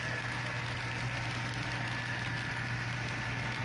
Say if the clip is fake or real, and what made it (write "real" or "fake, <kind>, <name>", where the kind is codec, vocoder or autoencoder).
real